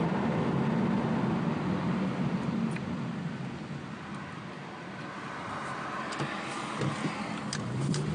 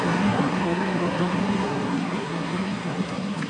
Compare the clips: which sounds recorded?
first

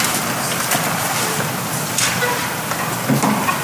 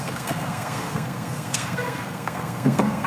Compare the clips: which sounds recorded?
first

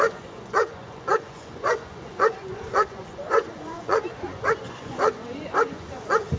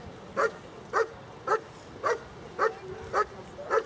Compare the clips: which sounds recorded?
second